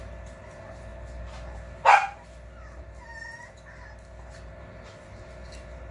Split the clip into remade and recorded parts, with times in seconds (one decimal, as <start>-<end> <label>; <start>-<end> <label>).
0.0-5.9 recorded